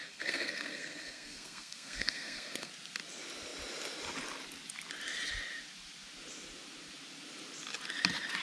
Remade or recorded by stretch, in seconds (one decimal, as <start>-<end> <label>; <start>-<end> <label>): 0.0-2.7 remade; 2.7-8.4 recorded